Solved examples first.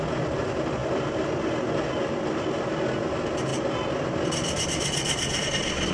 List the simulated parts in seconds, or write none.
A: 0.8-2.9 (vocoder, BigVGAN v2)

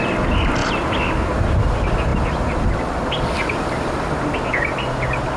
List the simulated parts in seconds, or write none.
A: none

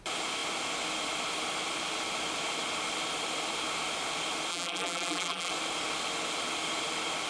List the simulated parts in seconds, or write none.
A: 4.5-5.5 (vocoder, BigVGAN v2)

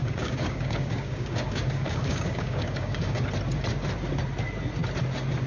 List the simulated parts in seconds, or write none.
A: 0.0-3.2 (codec, DAC)

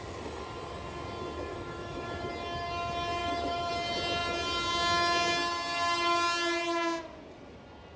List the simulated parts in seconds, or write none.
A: 1.5-2.3 (autoencoder, DAC-VAE); 3.2-3.7